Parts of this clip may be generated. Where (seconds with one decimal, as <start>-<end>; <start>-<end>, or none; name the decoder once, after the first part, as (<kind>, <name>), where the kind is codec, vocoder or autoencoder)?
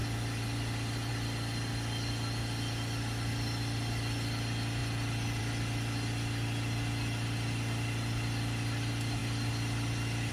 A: 0.0-1.1 (vocoder, BigVGAN v2); 4.8-5.4; 9.2-10.3